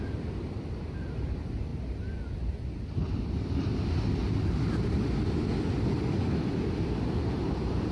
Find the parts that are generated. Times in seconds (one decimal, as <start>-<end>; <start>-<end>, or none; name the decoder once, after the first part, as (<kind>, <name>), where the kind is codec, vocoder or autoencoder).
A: none